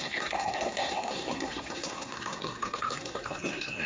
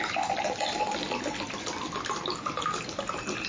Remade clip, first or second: first